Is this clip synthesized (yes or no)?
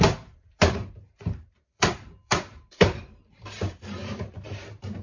yes